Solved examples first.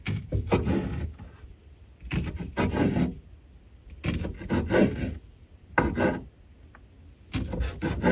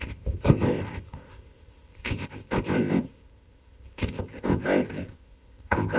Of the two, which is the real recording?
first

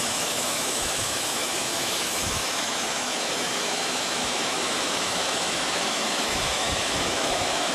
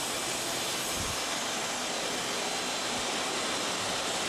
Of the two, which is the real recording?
second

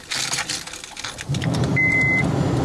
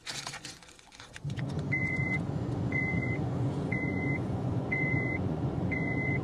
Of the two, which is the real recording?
first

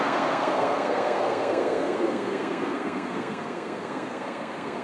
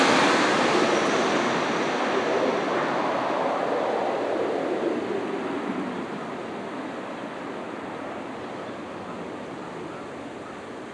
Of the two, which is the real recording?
second